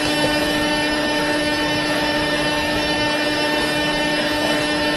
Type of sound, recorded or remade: remade